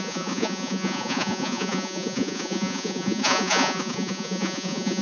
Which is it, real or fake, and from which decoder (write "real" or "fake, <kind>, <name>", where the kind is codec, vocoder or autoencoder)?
fake, vocoder, Vocos